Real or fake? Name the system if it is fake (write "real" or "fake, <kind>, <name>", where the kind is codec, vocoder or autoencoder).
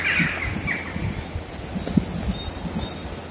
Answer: real